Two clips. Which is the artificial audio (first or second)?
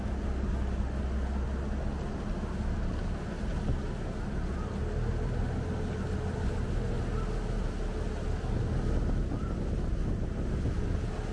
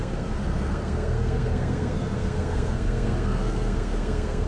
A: second